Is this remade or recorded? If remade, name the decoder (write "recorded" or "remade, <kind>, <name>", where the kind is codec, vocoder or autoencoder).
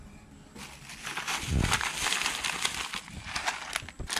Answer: recorded